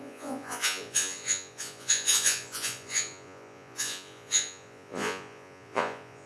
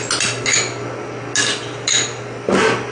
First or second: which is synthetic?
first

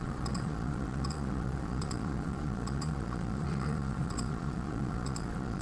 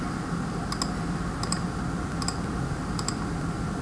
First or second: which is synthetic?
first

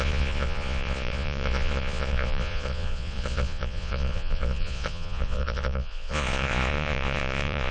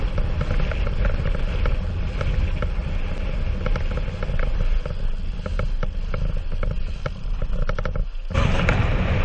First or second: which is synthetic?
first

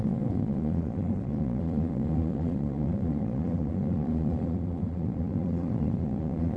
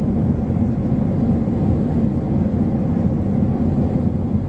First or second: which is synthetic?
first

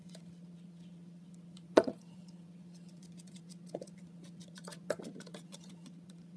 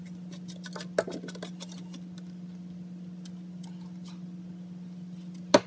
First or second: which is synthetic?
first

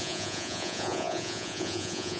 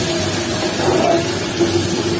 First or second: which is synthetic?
first